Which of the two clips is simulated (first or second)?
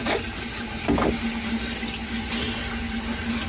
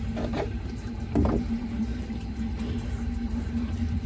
second